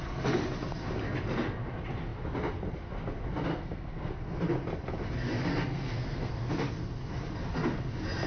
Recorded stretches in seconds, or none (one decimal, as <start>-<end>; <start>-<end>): 0.0-3.5; 4.4-5.5; 6.3-8.3